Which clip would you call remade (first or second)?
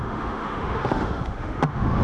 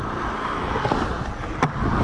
first